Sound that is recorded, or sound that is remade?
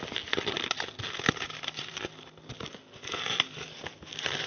recorded